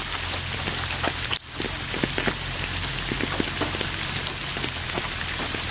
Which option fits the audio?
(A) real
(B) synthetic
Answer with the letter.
A